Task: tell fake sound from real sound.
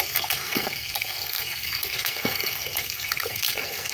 fake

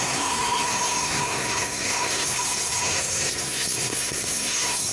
fake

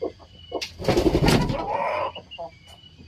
real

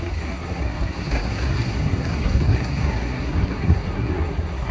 fake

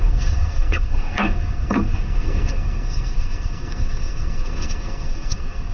fake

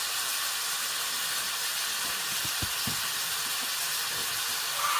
real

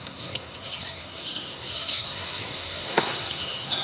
fake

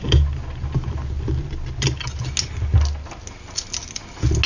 real